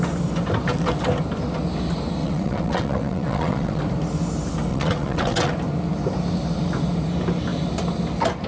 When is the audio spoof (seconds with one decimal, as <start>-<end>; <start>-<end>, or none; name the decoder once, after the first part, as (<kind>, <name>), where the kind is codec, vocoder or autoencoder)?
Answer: 2.2-3.8 (vocoder, WaveNeXt); 4.7-5.5